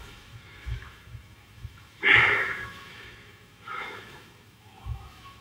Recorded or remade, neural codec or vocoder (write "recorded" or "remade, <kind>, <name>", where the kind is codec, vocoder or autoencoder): remade, autoencoder, DAC-VAE